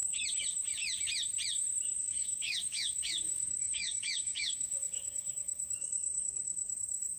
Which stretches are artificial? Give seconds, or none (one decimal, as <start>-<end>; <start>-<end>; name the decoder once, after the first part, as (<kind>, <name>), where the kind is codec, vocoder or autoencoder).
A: 2.0-7.2 (codec, DAC)